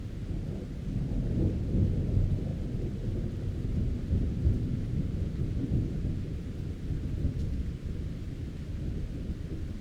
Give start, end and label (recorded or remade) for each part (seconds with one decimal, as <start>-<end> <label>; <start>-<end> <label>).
0.0-9.8 recorded